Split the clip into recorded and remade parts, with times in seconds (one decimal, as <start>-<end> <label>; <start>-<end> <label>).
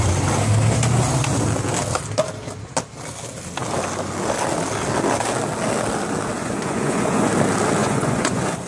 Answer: 0.0-6.4 recorded; 6.4-7.3 remade; 7.3-7.8 recorded; 7.8-8.7 remade